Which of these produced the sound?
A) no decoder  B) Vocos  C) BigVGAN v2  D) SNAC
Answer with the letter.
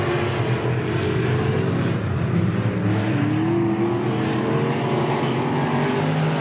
A